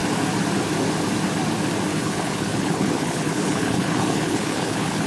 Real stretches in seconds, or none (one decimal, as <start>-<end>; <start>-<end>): 0.0-1.9